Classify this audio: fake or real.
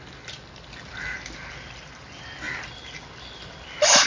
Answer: real